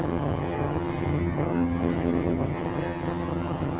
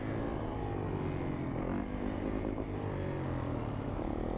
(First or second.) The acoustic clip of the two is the second